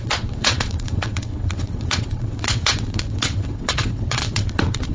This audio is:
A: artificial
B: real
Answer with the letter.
A